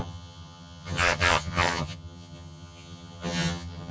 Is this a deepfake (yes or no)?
yes